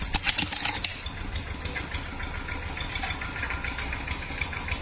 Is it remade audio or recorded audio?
recorded